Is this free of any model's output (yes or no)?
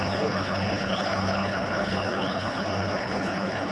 no